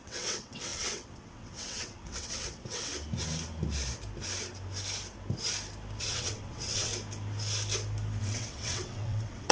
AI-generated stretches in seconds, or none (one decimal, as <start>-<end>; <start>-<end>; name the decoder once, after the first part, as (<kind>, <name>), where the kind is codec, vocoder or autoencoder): 0.0-2.9 (vocoder, WaveNeXt); 6.0-6.9; 8.2-9.5